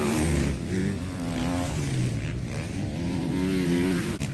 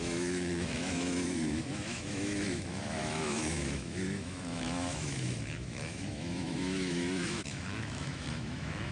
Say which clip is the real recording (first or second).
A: first